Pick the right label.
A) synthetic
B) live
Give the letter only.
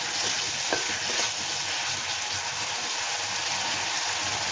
B